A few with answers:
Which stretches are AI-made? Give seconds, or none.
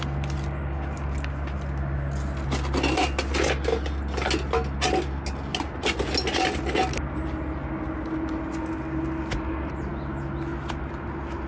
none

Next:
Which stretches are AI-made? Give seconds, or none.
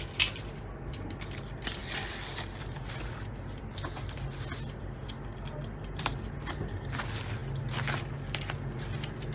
none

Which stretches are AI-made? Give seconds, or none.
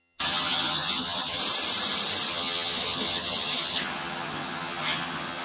0.0-1.4 (vocoder, HiFi-GAN); 2.3-5.4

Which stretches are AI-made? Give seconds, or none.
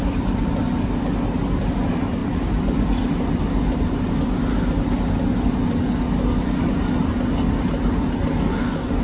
none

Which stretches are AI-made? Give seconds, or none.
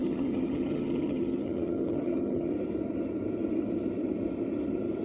0.0-2.5 (vocoder, HiFi-GAN)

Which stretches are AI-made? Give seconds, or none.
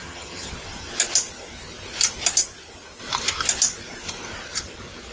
0.0-0.5 (vocoder, HiFi-GAN)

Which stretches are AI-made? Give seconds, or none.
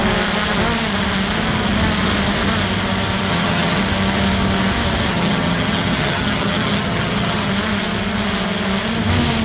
3.3-3.8 (vocoder, HiFi-GAN); 5.1-7.5